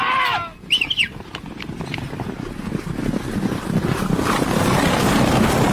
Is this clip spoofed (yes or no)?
no